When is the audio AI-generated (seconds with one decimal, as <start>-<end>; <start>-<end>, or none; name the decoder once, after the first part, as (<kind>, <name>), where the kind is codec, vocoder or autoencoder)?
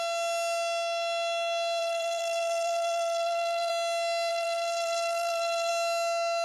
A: 1.8-3.7 (vocoder, BigVGAN v2); 4.3-5.7